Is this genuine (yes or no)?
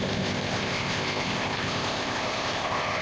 no